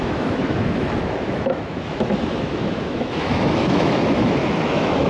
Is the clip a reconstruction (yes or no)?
yes